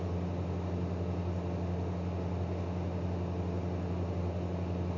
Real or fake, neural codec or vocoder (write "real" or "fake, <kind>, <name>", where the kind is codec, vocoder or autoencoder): real